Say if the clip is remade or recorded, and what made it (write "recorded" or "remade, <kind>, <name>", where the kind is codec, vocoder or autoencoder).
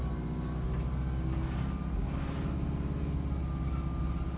recorded